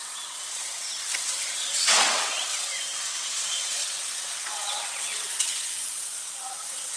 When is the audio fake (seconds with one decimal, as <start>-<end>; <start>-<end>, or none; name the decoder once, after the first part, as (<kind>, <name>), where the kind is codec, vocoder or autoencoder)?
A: 0.0-7.0 (vocoder, WaveNeXt)

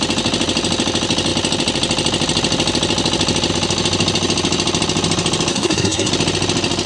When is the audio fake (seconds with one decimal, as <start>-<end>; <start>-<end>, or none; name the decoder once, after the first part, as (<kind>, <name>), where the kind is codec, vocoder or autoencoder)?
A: 5.5-6.1 (codec, SNAC)

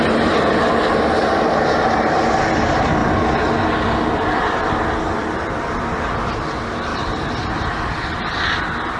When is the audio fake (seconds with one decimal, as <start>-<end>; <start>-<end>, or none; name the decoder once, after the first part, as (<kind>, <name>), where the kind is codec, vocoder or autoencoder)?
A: 6.9-7.4 (vocoder, BigVGAN v2)

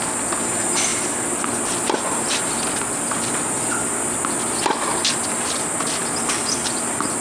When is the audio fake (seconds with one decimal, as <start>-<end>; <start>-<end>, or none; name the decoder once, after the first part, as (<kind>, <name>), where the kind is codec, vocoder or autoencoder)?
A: none

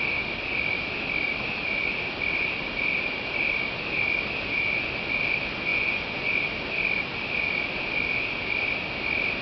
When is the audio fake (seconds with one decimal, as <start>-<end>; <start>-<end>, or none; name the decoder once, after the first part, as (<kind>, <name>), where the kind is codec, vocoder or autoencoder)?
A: 5.7-6.3 (vocoder, Vocos)

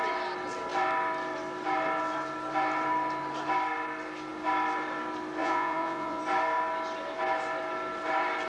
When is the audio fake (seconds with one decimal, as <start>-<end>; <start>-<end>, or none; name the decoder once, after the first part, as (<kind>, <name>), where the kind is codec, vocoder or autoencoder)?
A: 5.4-6.2 (vocoder, Vocos)